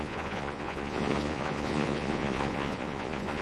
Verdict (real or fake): fake